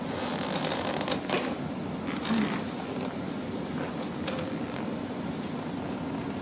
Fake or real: fake